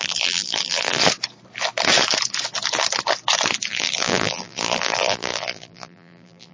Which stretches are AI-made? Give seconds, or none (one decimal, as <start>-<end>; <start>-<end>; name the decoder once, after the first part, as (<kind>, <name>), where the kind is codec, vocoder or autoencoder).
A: 0.0-1.0 (vocoder, BigVGAN v2); 3.7-6.5